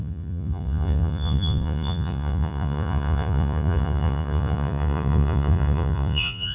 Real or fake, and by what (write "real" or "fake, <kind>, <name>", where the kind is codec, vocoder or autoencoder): fake, vocoder, Vocos